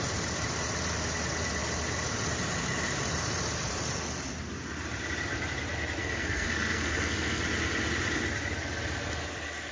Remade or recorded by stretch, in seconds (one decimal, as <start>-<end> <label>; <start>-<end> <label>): 0.0-6.0 recorded; 6.0-7.4 remade; 7.4-9.7 recorded